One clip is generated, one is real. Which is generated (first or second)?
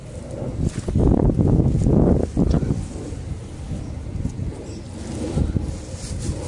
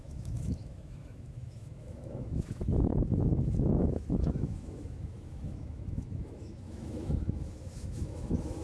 second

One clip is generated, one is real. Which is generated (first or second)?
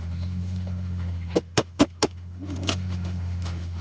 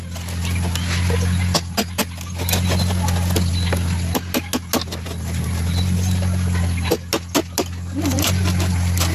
first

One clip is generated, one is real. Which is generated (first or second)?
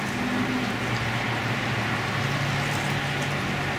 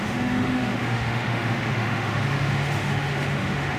second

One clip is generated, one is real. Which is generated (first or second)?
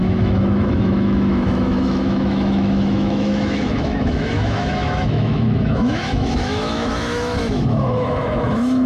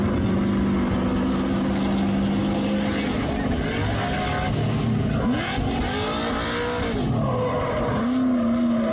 first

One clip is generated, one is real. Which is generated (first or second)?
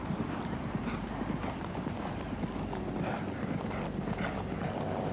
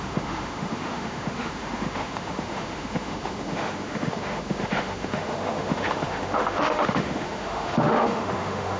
second